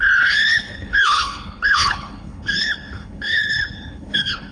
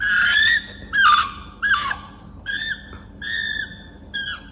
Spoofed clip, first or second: first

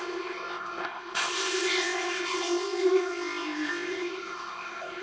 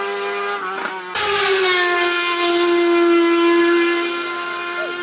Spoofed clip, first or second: first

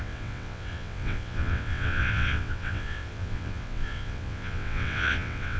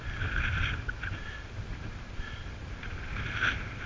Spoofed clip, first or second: first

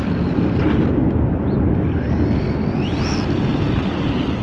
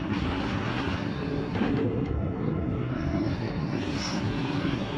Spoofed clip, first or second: second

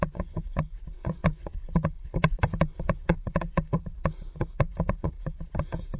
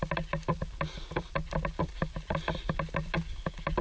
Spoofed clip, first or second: first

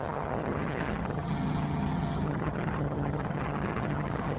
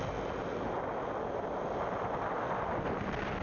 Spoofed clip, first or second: first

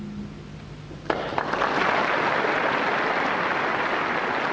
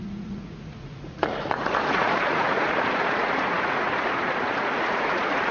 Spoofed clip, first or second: second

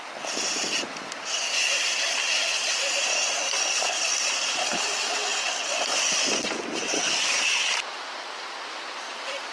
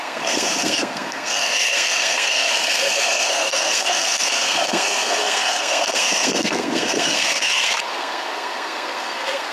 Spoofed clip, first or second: second